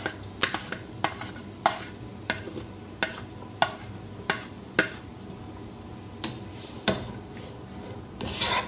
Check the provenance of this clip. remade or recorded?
recorded